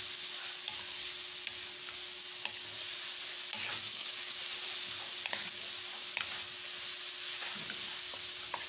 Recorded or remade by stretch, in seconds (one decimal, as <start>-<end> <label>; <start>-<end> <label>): 0.0-3.7 recorded; 3.7-4.4 remade; 4.4-8.7 recorded